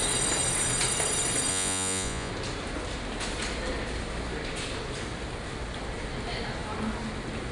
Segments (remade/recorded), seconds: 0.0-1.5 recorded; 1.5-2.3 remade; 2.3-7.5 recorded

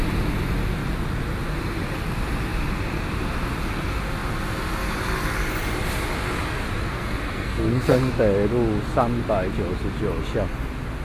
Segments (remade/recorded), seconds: 0.0-6.9 recorded; 6.9-8.1 remade; 8.1-11.0 recorded

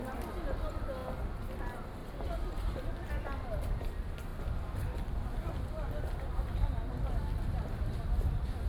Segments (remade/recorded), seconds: 0.0-2.0 recorded; 2.0-3.1 remade; 3.1-8.7 recorded

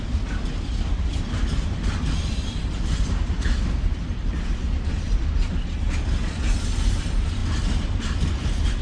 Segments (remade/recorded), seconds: 0.0-7.4 remade; 7.4-8.4 recorded; 8.4-8.8 remade

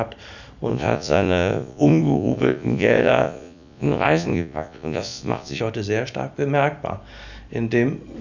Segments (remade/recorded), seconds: 0.0-0.7 recorded; 0.7-5.6 remade; 5.6-8.2 recorded

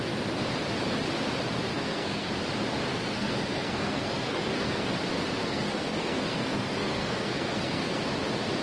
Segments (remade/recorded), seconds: 0.0-1.7 recorded; 1.7-2.3 remade; 2.3-2.9 recorded; 2.9-4.9 remade; 4.9-5.4 recorded; 5.4-8.0 remade; 8.0-8.6 recorded

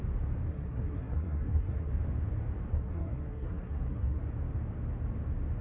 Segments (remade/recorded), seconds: 0.0-0.5 recorded; 0.5-1.9 remade; 1.9-2.7 recorded; 2.7-4.2 remade; 4.2-5.6 recorded